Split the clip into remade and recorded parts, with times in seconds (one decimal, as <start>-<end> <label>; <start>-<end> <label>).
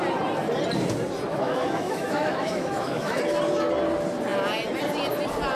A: 0.0-1.3 recorded; 1.3-3.2 remade; 3.2-5.5 recorded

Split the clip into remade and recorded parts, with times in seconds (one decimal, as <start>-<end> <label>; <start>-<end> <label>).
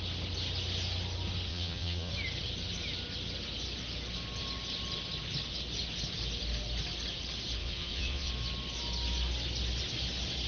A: 0.0-1.5 recorded; 1.5-2.1 remade; 2.1-7.6 recorded; 7.6-8.3 remade; 8.3-10.5 recorded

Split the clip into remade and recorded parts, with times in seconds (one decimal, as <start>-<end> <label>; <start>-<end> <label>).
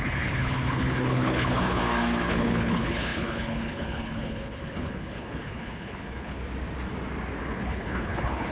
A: 0.0-1.8 remade; 1.8-2.3 recorded; 2.3-6.4 remade; 6.4-7.4 recorded; 7.4-8.5 remade